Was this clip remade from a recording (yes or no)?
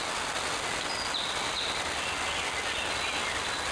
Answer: no